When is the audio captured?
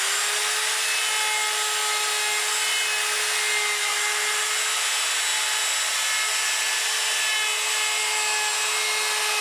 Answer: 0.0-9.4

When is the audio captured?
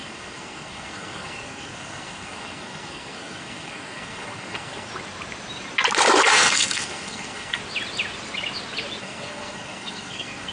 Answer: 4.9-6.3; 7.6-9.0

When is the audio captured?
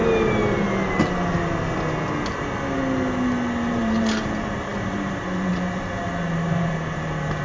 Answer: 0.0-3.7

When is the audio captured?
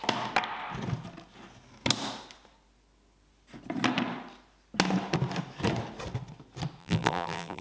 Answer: 0.0-6.8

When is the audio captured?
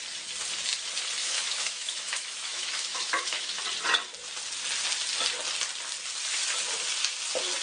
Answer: 0.0-1.2; 3.6-7.6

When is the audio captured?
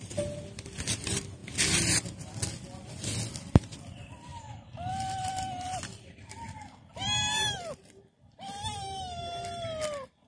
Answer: 1.4-3.8; 4.3-4.9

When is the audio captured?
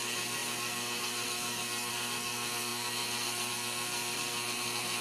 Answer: none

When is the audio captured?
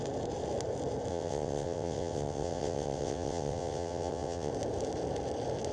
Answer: 0.0-1.1; 4.5-5.7